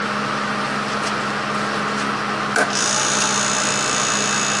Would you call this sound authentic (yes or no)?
yes